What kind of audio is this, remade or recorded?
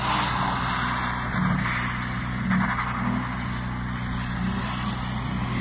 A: recorded